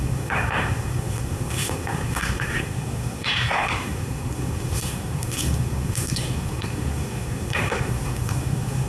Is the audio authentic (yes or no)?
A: no